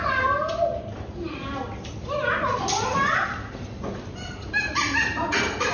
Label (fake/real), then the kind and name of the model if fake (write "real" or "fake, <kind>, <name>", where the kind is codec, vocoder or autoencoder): real